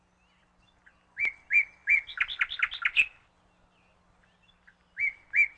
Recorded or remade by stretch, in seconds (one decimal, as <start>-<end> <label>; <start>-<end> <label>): 0.0-5.6 recorded